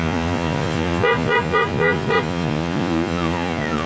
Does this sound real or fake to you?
fake